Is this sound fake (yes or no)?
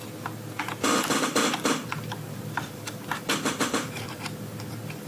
yes